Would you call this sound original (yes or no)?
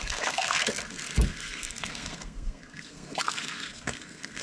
no